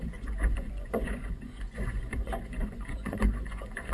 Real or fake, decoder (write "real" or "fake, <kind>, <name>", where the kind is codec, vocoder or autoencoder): fake, vocoder, Vocos